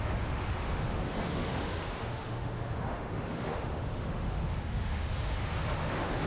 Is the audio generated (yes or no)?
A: yes